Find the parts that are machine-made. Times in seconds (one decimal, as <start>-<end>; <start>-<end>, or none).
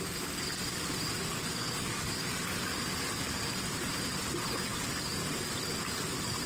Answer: 1.3-2.2